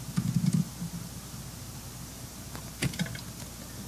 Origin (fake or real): real